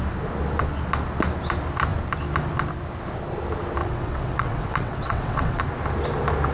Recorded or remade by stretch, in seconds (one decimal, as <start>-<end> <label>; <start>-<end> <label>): 0.0-3.8 recorded; 3.8-5.6 remade; 5.6-6.5 recorded